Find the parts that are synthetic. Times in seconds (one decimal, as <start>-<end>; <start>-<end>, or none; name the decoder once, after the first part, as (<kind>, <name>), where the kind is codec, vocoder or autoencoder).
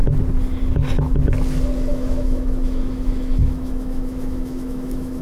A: 1.9-5.2 (autoencoder, DAC-VAE)